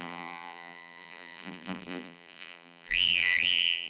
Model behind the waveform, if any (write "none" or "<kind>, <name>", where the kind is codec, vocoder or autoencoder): vocoder, BigVGAN v2